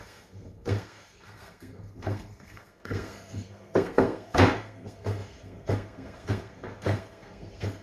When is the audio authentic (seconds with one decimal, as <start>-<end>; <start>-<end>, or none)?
none